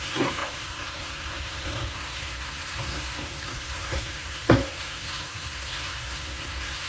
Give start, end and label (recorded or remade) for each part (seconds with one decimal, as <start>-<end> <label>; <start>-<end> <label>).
0.0-6.9 remade